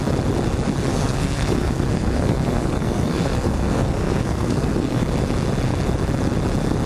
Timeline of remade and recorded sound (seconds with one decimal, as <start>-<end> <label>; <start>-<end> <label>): 0.0-0.9 recorded; 0.9-5.0 remade; 5.0-6.9 recorded